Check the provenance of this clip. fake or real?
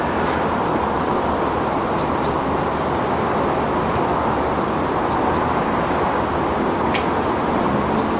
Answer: real